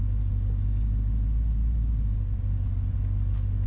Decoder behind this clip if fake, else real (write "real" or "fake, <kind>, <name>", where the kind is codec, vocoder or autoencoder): real